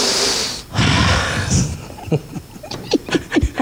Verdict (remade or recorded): recorded